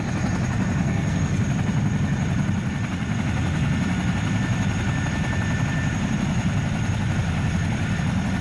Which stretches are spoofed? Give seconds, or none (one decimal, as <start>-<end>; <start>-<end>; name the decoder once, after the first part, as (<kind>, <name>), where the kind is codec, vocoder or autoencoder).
0.8-1.4 (codec, SNAC)